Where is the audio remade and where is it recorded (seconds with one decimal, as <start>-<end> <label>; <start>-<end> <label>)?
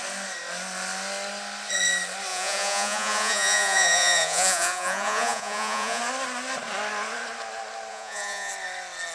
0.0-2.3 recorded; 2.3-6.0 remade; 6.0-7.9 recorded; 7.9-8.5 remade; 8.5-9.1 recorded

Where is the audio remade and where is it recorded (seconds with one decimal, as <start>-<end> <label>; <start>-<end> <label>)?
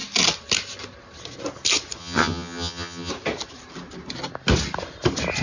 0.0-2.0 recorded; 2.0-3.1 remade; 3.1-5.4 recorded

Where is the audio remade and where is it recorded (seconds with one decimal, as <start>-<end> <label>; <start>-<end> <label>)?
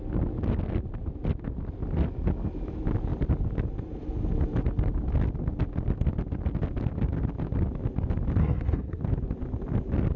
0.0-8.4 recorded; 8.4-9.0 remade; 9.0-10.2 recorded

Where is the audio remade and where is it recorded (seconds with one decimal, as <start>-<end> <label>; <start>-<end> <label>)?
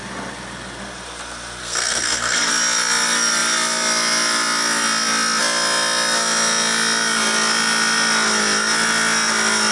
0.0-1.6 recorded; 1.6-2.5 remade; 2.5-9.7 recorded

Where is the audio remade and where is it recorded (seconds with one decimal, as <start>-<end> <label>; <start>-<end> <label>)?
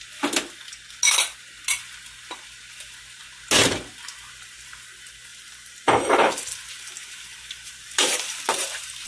0.0-5.3 recorded; 5.3-9.1 remade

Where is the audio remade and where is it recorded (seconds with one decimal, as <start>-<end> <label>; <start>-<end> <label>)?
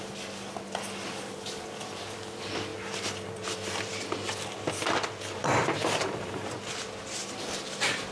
0.0-2.7 recorded; 2.7-4.0 remade; 4.0-5.4 recorded; 5.4-6.6 remade; 6.6-8.1 recorded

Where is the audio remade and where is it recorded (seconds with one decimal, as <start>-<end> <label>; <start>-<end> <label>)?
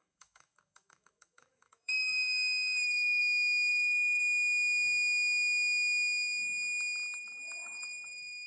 0.0-3.2 remade; 3.2-3.7 recorded; 3.7-4.2 remade; 4.2-7.2 recorded; 7.2-8.5 remade